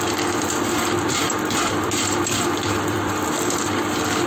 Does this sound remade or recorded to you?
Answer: remade